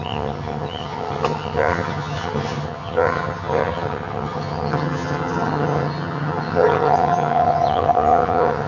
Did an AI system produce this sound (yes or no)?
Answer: yes